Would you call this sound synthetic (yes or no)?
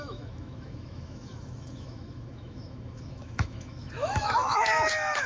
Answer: yes